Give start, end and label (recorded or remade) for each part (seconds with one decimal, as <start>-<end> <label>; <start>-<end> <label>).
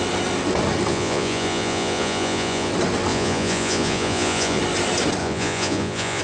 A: 0.0-0.9 recorded; 0.9-2.7 remade; 2.7-3.1 recorded; 3.1-4.6 remade; 4.6-5.2 recorded; 5.2-6.2 remade